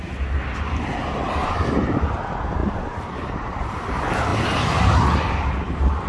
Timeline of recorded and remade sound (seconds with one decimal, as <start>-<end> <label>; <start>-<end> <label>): 0.0-2.6 recorded; 2.6-3.9 remade; 3.9-4.3 recorded; 4.3-6.1 remade